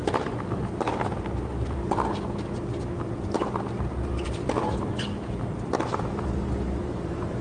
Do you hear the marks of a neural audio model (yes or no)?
yes